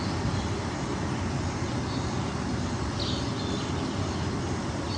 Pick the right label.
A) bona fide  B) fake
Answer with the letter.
A